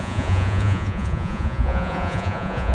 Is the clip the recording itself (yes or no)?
no